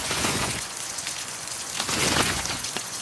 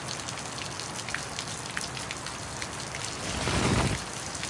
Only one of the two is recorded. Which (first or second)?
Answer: second